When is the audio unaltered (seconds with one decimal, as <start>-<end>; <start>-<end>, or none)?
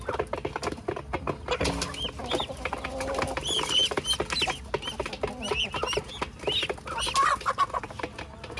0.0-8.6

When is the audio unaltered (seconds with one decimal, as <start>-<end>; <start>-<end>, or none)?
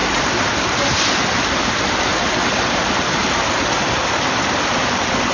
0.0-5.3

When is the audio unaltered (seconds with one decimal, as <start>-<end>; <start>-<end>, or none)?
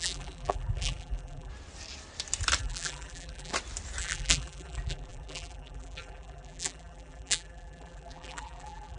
1.5-2.6; 3.5-4.0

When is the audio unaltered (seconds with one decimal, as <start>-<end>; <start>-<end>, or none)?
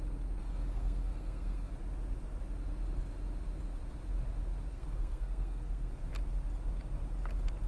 0.0-0.4; 1.7-4.7; 5.9-7.7